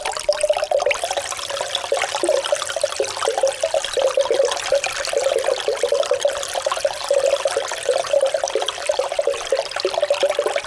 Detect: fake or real real